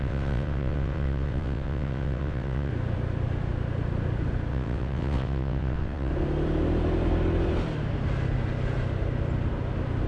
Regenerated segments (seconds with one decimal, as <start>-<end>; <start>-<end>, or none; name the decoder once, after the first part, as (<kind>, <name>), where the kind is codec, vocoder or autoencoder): 0.0-2.7 (vocoder, WaveNeXt); 4.5-6.1